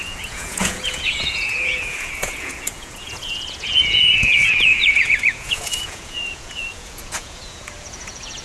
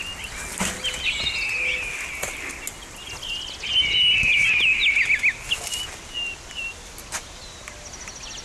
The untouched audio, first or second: second